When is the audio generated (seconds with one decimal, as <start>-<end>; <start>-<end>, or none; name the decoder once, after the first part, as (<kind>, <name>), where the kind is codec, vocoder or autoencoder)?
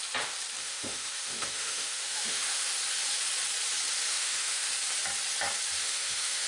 0.6-2.7 (autoencoder, DAC-VAE); 4.1-4.7; 5.8-6.5